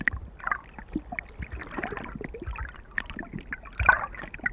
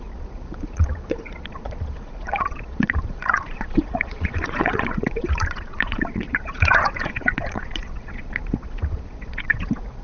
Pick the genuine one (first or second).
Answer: first